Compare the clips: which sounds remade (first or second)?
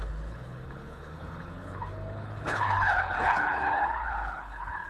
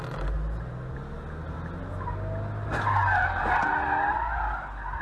first